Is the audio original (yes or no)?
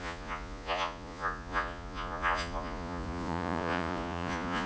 no